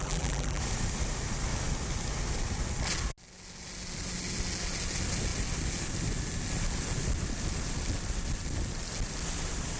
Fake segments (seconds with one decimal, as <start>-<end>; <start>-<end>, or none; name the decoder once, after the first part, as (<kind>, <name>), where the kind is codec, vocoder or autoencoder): 0.0-0.6 (vocoder, BigVGAN v2)